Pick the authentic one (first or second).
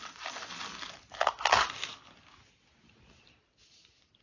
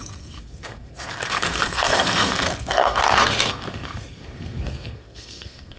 first